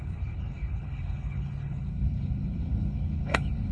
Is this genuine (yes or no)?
no